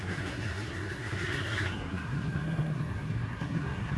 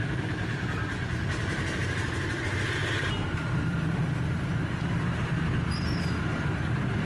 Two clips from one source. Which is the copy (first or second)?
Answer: first